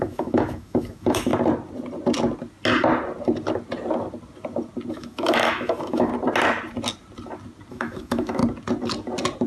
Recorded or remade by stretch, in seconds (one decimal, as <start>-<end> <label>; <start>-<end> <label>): 0.0-1.3 remade; 1.3-4.9 recorded; 4.9-6.1 remade; 6.1-7.7 recorded; 7.7-8.4 remade; 8.4-9.5 recorded